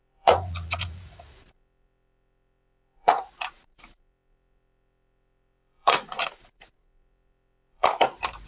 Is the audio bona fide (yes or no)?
no